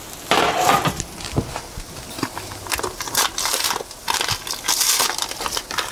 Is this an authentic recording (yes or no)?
yes